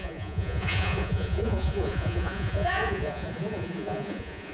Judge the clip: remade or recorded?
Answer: remade